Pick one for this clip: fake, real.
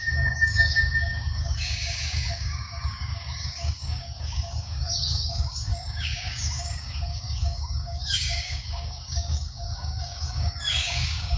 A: fake